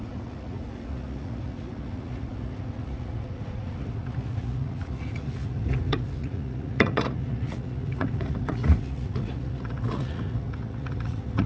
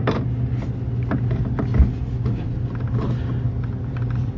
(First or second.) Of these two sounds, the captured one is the second